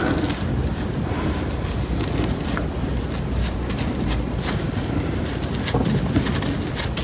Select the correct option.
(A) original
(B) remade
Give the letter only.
A